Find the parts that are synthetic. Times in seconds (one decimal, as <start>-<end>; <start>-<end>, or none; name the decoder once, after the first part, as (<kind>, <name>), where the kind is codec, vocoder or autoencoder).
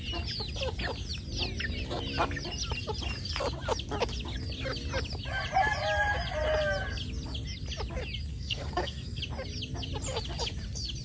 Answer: 8.3-9.2 (codec, SNAC)